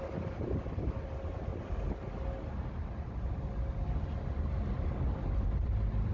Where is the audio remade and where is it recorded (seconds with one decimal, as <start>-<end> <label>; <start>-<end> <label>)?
0.0-6.1 recorded